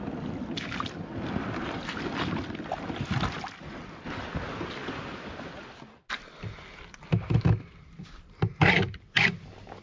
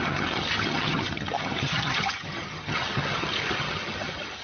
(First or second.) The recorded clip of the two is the first